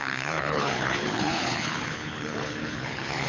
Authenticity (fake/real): fake